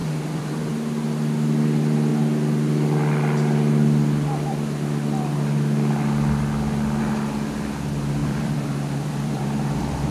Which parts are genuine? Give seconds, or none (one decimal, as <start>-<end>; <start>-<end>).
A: 0.7-8.2